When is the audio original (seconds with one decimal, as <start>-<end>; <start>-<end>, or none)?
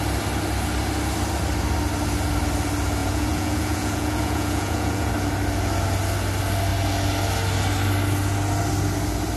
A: 0.0-3.0; 5.1-9.4